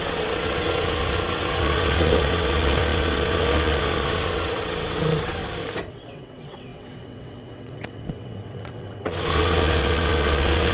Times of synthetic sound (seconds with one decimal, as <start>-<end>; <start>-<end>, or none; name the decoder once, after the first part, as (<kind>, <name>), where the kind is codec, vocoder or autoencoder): 0.0-5.4 (vocoder, WaveNeXt); 5.9-10.7